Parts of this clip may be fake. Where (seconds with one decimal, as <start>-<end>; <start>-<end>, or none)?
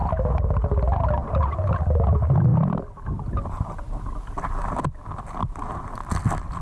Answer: none